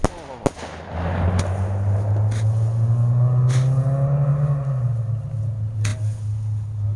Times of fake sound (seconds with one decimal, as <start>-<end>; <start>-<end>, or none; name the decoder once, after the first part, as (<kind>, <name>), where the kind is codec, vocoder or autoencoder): none